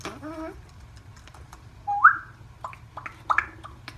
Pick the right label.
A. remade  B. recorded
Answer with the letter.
B